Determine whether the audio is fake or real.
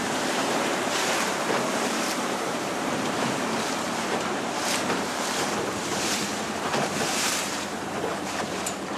fake